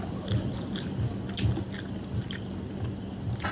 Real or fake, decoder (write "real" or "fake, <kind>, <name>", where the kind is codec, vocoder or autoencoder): real